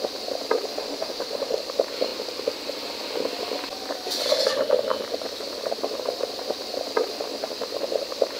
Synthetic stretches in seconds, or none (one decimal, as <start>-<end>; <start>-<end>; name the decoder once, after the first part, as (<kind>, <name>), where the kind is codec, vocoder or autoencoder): 0.8-1.6 (autoencoder, DAC-VAE)